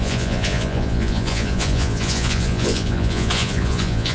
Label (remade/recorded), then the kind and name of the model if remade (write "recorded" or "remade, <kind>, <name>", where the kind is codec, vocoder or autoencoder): remade, vocoder, Vocos